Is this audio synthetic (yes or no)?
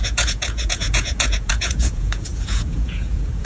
yes